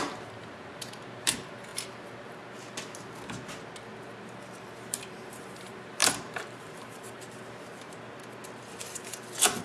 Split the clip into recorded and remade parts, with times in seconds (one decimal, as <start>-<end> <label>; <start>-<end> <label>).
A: 0.0-1.7 remade; 1.7-4.2 recorded; 4.2-8.2 remade; 8.2-9.6 recorded